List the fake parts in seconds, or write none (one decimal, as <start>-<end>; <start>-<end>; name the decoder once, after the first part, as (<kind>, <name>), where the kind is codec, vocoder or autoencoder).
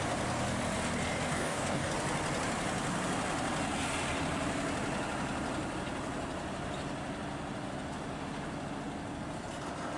1.3-1.9 (codec, DAC)